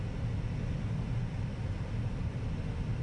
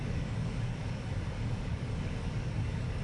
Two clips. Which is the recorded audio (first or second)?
first